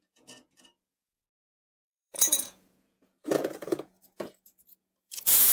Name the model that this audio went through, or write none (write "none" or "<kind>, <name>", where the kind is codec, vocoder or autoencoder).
vocoder, Vocos